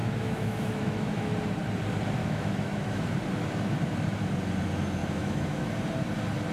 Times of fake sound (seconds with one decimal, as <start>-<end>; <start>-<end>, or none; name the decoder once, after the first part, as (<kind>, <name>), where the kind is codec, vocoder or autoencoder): 0.0-1.3 (autoencoder, DAC-VAE); 2.2-3.2; 5.0-5.7